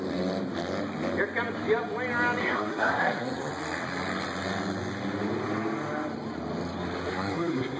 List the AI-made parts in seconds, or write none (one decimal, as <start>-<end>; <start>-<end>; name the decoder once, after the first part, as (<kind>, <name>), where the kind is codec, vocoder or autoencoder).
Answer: 2.4-3.5 (codec, SNAC); 7.1-7.8